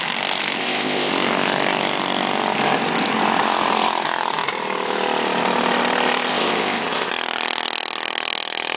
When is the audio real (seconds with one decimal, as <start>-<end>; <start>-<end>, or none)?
0.0-0.6; 1.1-6.3; 7.1-8.8